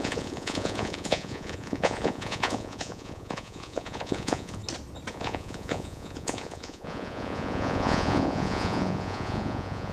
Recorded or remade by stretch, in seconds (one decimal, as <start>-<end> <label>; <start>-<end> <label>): 0.0-4.6 remade; 4.6-5.1 recorded; 5.1-9.9 remade